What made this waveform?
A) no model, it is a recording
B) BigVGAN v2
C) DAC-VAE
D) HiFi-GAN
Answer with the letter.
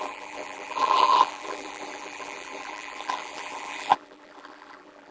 B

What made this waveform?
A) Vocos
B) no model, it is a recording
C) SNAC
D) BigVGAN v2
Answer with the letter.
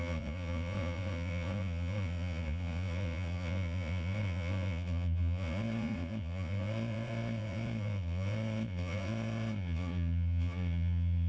A